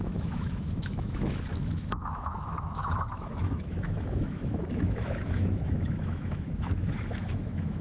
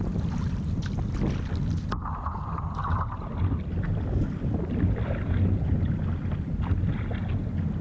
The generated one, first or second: first